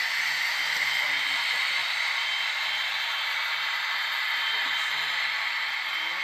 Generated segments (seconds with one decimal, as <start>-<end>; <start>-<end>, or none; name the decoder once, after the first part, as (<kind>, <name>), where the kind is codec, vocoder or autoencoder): 0.0-6.2 (vocoder, BigVGAN v2)